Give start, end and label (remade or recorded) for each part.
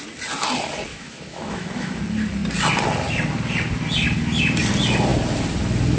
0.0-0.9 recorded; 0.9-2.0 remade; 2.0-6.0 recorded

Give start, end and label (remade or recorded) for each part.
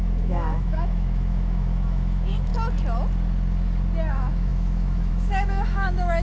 0.0-2.5 remade; 2.5-4.1 recorded; 4.1-6.2 remade